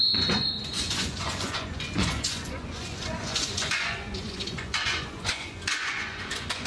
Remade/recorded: remade